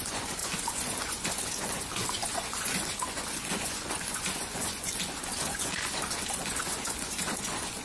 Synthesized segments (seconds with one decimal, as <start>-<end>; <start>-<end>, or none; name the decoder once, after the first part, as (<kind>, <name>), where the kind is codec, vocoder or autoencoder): 0.0-7.8 (vocoder, Vocos)

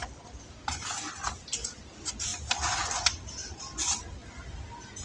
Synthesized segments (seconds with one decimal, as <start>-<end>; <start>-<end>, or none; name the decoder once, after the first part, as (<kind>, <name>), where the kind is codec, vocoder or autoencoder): none

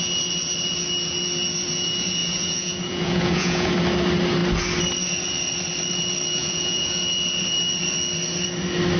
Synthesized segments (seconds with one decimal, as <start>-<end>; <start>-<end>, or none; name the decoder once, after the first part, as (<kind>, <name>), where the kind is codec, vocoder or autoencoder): 2.2-3.7 (vocoder, Vocos); 6.4-7.0

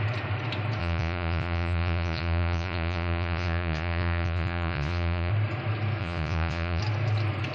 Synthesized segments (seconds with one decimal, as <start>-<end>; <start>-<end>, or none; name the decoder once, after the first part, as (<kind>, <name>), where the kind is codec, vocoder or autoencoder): 0.8-5.3 (vocoder, Vocos); 6.0-6.8